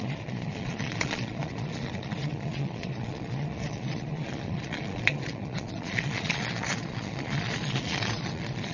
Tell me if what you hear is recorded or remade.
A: remade